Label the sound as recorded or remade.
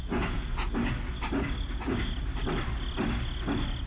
recorded